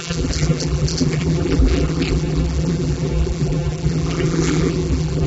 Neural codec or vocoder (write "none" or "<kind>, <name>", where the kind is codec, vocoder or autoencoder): vocoder, BigVGAN v2